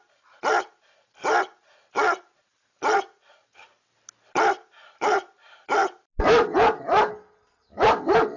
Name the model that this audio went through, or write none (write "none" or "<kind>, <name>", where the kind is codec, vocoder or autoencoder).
none